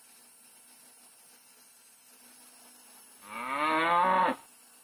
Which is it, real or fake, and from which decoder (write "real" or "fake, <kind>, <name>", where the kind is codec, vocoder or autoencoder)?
real